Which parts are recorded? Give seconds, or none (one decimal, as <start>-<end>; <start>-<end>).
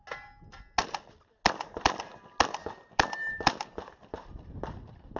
0.0-5.2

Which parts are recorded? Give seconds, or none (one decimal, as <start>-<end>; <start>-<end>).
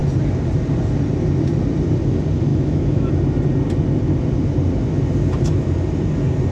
0.0-2.5; 3.1-6.5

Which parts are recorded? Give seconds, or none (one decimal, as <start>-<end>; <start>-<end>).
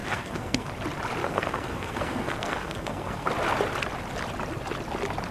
0.7-1.2; 3.3-5.3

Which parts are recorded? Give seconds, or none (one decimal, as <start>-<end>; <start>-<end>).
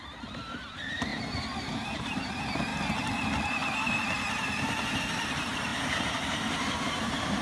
1.1-1.6; 2.7-5.3